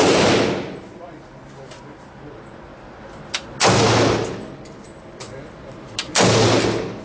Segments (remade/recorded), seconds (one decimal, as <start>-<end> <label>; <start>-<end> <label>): 0.0-7.0 recorded